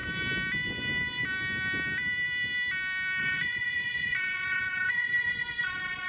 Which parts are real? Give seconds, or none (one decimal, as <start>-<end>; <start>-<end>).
0.0-3.2